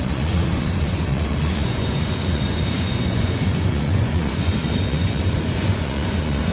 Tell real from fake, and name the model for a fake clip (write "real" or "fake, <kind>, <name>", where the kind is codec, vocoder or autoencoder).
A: fake, vocoder, Vocos